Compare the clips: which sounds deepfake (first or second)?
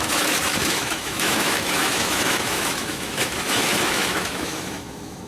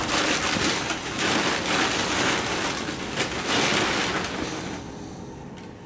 first